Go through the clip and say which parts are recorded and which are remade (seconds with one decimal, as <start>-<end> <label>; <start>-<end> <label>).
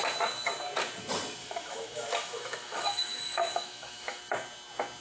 0.0-1.4 recorded; 1.4-4.2 remade; 4.2-5.0 recorded